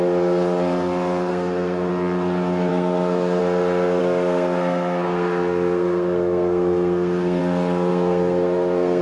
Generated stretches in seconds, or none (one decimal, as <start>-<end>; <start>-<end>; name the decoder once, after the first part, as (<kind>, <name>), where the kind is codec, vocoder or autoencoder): 1.3-1.9 (codec, SNAC); 2.7-3.4; 4.0-7.4; 7.9-9.0